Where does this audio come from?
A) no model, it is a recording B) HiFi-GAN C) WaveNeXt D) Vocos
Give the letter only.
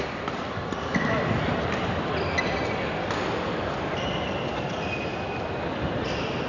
A